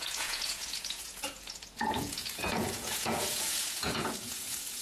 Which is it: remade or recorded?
remade